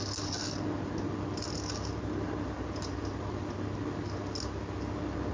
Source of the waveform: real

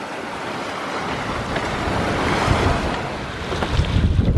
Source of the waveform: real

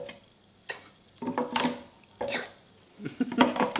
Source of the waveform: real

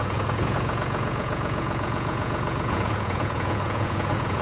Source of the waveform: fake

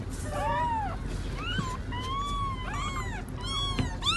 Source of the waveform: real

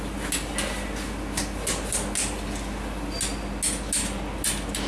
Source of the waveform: real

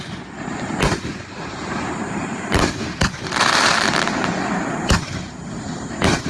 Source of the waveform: fake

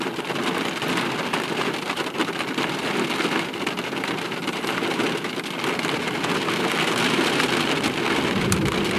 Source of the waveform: real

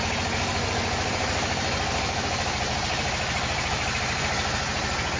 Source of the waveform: real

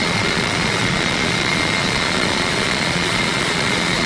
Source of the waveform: fake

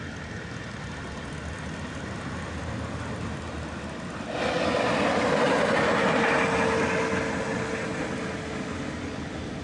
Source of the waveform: real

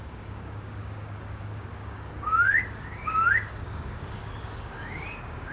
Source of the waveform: fake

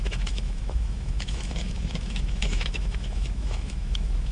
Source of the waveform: fake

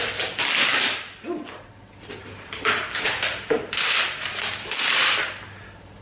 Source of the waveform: real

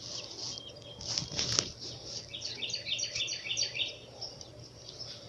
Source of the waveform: real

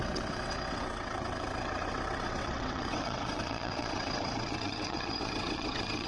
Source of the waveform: fake